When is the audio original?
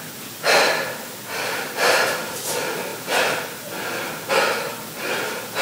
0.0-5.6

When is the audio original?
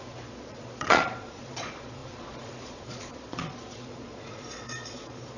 none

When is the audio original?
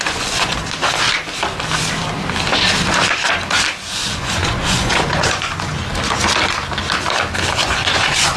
0.5-3.7; 5.7-7.5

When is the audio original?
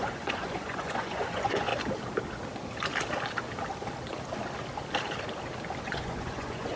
1.7-5.8